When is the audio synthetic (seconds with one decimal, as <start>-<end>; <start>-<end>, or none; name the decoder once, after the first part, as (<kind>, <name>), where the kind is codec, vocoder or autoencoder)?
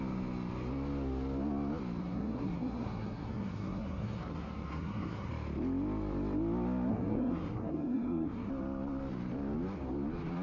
2.0-5.3 (codec, SNAC); 6.9-8.5